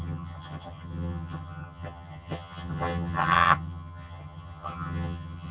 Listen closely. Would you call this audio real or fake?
fake